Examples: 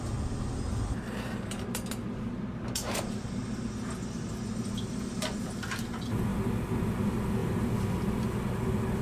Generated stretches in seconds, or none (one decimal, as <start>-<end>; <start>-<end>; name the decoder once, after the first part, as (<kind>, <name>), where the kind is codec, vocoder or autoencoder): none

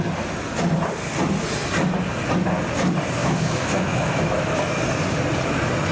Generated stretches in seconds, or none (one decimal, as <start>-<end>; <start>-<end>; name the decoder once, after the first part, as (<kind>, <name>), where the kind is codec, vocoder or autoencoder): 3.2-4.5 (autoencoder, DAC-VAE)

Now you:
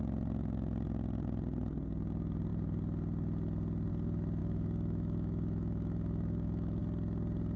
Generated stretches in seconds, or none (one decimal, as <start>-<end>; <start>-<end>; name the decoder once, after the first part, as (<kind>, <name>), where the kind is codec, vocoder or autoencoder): 4.4-6.8 (autoencoder, DAC-VAE)

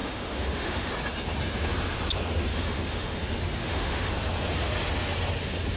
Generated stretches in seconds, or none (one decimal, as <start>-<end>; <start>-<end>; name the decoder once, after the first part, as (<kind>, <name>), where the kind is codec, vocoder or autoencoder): 0.0-0.9 (autoencoder, DAC-VAE); 2.5-3.2; 3.6-4.1